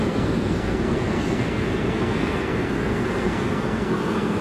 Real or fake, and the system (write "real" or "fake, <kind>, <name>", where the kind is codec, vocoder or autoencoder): fake, codec, SNAC